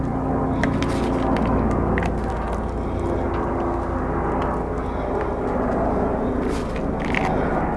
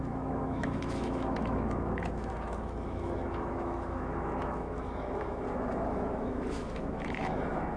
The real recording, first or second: first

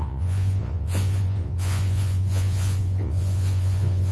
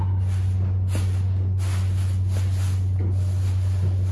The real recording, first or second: second